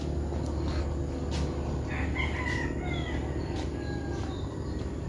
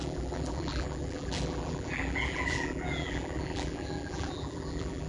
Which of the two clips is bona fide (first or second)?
first